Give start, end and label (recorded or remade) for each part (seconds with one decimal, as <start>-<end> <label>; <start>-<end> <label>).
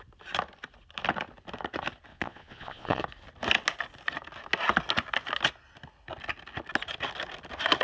0.0-2.1 recorded; 2.1-3.0 remade; 3.0-7.8 recorded